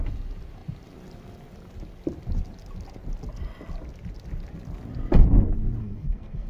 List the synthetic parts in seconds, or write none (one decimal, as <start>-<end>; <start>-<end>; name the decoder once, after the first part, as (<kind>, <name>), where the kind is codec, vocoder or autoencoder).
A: 5.8-6.5 (codec, SNAC)